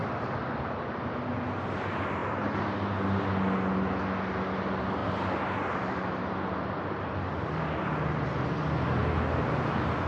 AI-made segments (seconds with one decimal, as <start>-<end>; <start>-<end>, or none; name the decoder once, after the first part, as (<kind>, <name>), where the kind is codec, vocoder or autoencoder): 5.0-6.2 (vocoder, BigVGAN v2)